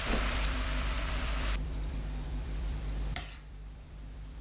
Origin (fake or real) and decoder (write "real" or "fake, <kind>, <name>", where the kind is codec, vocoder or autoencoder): fake, vocoder, BigVGAN v2